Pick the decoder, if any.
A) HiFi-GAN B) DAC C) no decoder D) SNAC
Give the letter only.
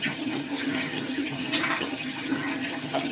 A